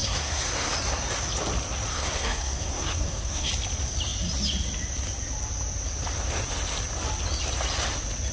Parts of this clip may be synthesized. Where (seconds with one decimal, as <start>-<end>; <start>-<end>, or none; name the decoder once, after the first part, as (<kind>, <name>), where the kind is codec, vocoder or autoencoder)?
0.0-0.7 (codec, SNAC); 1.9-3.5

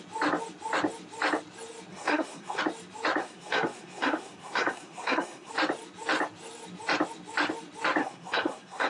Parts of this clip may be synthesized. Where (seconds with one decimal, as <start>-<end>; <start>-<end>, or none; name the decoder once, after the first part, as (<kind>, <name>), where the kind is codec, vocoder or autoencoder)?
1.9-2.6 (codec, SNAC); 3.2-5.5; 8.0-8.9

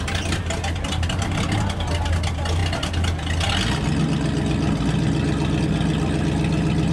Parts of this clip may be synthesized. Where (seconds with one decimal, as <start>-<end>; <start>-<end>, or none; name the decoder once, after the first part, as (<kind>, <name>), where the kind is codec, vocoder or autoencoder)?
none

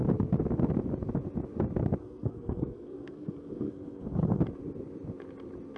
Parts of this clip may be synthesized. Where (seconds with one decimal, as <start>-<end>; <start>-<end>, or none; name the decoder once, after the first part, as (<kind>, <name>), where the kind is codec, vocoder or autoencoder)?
2.0-4.4 (codec, SNAC)

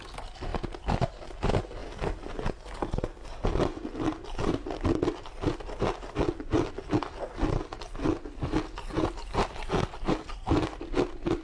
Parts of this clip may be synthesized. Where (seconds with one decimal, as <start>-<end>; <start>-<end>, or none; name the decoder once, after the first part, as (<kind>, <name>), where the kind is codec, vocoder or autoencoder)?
none